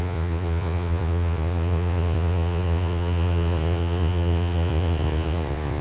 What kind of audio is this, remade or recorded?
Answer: remade